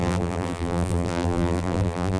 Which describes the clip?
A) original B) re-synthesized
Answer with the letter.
B